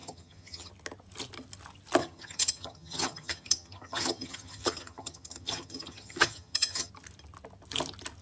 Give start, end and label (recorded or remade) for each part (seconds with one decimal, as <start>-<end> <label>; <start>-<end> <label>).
0.0-0.7 remade; 0.7-2.0 recorded; 2.0-6.9 remade; 6.9-8.2 recorded